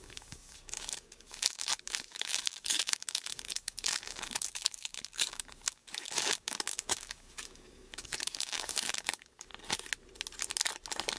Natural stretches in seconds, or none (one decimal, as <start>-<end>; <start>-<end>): 9.5-11.2